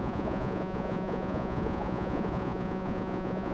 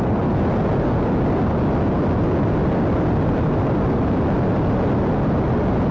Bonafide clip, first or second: second